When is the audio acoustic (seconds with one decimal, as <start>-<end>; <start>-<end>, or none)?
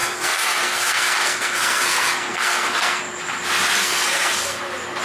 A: 3.0-3.8; 4.6-5.0